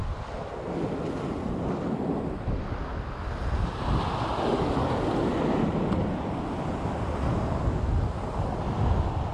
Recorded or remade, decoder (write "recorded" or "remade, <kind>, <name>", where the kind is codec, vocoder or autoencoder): recorded